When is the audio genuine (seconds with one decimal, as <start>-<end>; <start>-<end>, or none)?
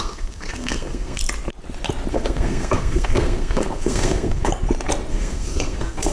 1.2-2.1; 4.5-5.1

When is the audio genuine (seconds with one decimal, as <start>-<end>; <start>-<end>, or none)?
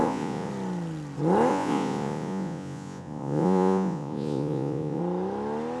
0.5-1.5; 5.0-5.8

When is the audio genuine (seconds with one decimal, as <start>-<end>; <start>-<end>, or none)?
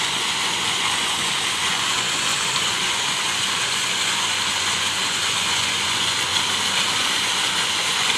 6.3-6.9